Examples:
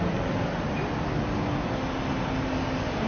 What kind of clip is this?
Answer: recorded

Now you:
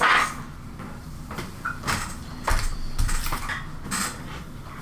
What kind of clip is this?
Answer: recorded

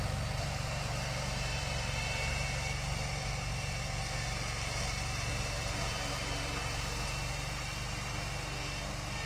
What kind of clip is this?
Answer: recorded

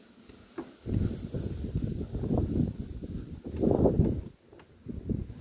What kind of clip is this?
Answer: recorded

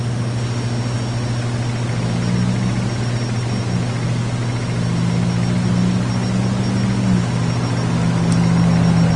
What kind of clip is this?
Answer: recorded